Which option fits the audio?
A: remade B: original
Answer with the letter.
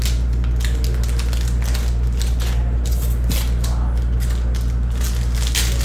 B